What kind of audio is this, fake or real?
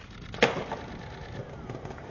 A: real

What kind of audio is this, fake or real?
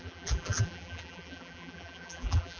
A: fake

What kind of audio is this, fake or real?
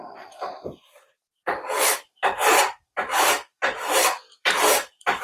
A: fake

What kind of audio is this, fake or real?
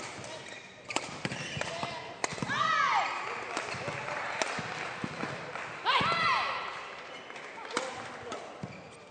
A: real